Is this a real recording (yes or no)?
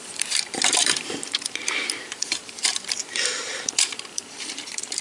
no